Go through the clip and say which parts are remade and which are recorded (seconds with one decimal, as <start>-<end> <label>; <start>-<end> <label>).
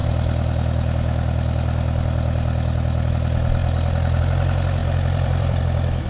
0.0-4.8 recorded; 4.8-5.6 remade; 5.6-6.1 recorded